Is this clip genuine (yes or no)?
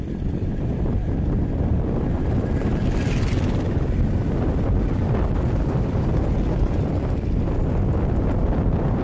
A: no